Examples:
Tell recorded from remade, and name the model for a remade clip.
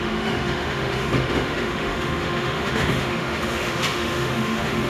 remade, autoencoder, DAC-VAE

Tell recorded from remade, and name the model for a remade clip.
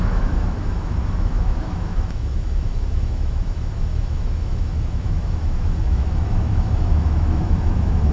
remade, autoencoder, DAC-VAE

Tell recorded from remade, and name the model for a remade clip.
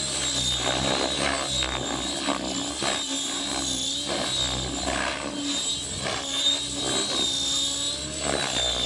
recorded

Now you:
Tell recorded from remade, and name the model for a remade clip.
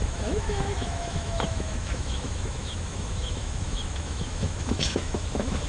remade, autoencoder, DAC-VAE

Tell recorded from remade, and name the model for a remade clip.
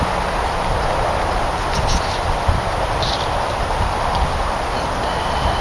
recorded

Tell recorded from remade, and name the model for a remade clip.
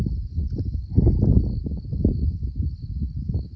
recorded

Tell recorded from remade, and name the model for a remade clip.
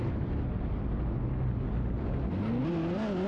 recorded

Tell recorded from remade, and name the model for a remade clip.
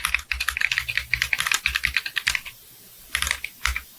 recorded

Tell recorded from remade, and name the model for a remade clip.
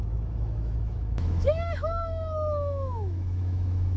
remade, autoencoder, DAC-VAE